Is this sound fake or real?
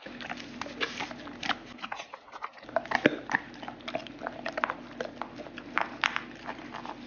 real